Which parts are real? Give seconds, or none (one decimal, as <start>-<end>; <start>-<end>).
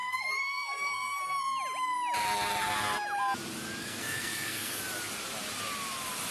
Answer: 1.4-3.8; 4.8-6.3